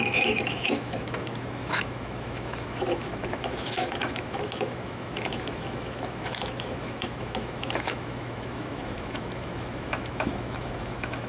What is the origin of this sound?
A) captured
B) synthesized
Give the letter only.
B